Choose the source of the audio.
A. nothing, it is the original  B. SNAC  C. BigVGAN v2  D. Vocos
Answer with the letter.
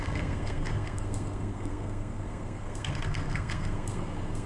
B